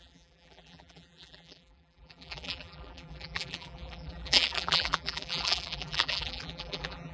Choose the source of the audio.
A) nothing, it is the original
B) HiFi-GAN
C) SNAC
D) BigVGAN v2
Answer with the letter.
D